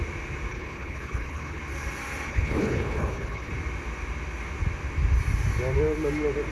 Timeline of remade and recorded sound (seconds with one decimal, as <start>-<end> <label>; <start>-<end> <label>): 0.0-0.5 recorded; 0.5-1.6 remade; 1.6-2.3 recorded; 2.3-3.5 remade; 3.5-6.5 recorded